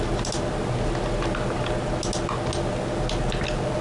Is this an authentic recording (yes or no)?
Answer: yes